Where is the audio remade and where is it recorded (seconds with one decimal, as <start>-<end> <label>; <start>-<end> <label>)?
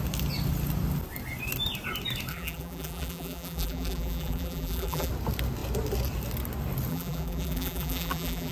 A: 0.0-2.3 recorded; 2.3-5.1 remade; 5.1-6.9 recorded; 6.9-8.5 remade